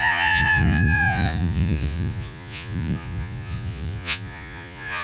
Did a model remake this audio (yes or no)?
yes